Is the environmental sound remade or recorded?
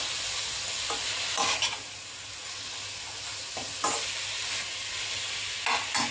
recorded